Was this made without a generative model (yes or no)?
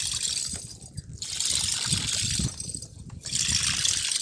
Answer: no